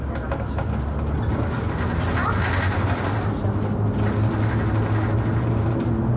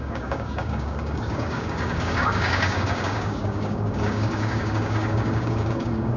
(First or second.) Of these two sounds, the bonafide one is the first